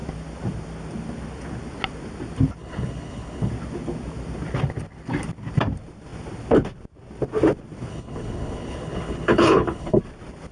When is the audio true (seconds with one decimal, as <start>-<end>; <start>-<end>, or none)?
0.0-2.6; 3.5-7.9; 10.0-10.5